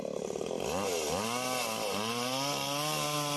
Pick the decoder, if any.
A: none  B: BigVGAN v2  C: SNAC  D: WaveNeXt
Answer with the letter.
A